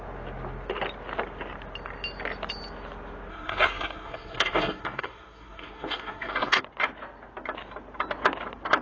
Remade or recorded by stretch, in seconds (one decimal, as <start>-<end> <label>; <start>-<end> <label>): 0.0-3.3 recorded; 3.3-6.6 remade; 6.6-8.8 recorded